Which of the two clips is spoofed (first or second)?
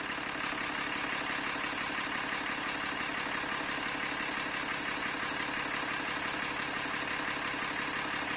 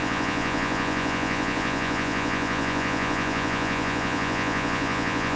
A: second